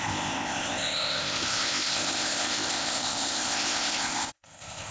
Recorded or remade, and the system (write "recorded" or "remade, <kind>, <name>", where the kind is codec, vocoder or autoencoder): remade, codec, ZipCodec